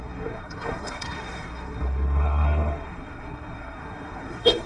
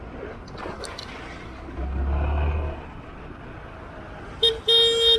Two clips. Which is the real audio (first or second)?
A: second